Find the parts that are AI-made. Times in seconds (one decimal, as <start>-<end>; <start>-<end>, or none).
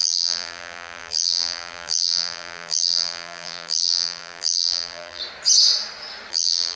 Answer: 0.0-5.2; 6.3-6.8